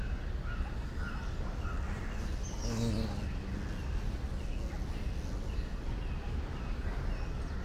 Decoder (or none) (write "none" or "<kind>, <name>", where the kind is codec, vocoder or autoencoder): none